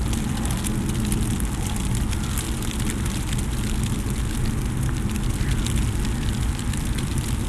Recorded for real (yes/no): yes